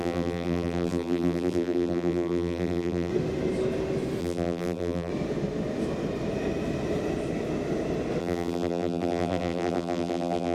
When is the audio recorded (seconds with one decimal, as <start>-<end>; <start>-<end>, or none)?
3.1-4.2; 5.1-8.2